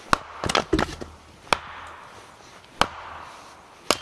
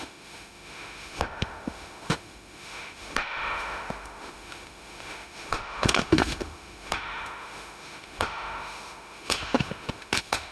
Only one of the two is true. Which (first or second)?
first